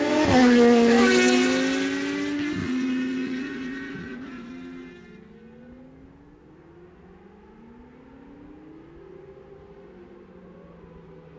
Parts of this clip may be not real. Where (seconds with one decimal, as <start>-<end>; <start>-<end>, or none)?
2.6-4.5